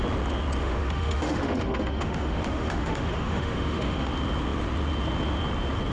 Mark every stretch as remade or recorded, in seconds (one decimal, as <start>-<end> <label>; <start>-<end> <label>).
0.0-0.6 recorded; 0.6-4.1 remade; 4.1-5.9 recorded